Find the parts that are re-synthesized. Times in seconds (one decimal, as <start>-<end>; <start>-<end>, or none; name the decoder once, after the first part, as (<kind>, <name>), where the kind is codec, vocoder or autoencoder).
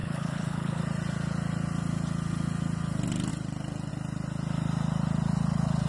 0.0-0.8 (codec, HILCodec)